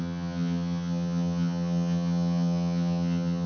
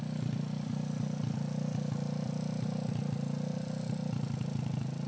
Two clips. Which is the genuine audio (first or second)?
second